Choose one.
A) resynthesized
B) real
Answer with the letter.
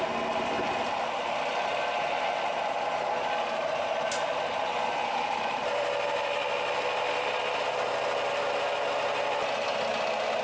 B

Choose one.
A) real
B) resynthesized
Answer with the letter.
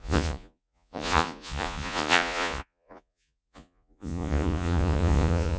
B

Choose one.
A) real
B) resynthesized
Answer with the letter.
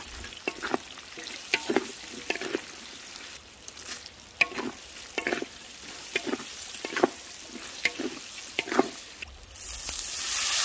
A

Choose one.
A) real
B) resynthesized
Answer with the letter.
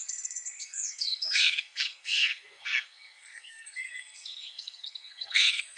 B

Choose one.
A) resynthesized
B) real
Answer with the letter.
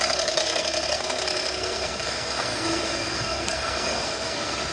A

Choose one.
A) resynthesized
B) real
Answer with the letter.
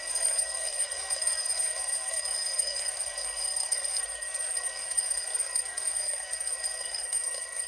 A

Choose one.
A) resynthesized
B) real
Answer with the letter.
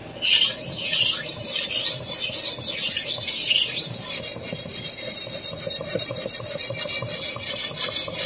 B